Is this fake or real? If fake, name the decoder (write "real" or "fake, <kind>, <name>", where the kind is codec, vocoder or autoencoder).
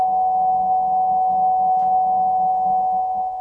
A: real